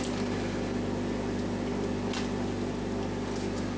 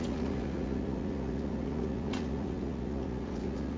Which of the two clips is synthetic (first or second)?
second